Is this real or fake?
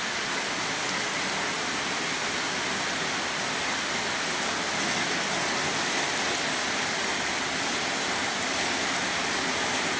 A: real